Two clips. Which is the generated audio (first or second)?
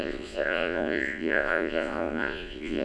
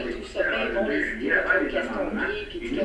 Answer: first